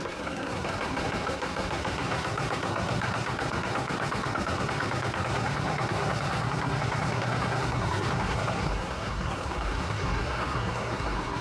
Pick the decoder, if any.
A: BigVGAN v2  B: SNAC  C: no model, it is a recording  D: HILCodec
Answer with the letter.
B